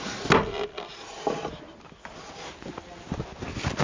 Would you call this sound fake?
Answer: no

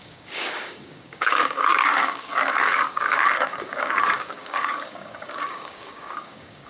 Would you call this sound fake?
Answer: yes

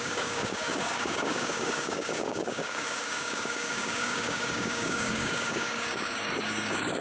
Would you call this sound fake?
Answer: yes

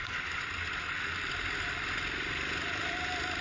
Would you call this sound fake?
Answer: no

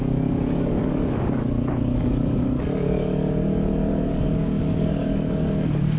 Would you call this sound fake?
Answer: yes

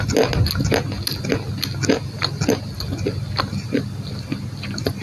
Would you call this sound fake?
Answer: no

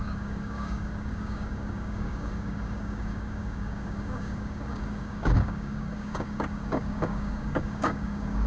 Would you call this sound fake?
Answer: yes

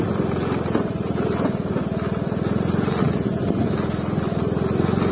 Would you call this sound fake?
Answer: no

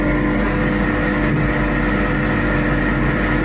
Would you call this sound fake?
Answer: no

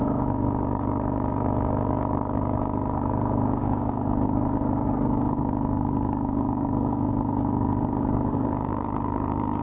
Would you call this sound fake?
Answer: yes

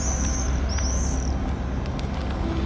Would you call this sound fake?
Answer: no